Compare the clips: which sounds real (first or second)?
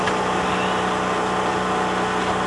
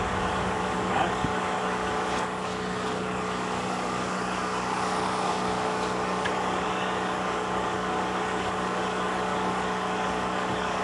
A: first